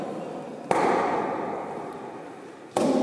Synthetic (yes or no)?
yes